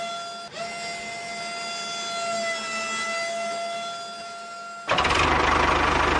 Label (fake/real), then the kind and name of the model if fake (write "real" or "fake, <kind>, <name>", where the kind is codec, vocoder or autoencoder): real